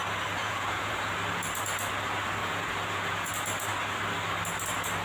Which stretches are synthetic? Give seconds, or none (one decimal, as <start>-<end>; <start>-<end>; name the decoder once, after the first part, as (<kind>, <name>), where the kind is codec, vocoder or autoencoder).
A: 0.4-1.1 (vocoder, Vocos); 2.4-3.3